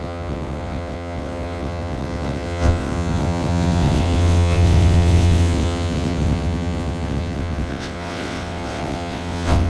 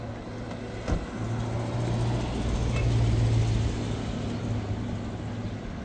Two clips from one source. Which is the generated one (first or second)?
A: first